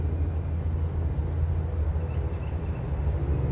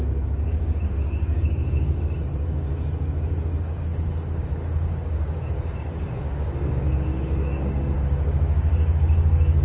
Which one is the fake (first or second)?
second